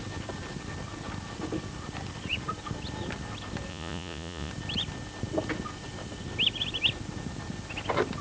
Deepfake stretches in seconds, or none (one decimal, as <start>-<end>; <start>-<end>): 3.7-4.5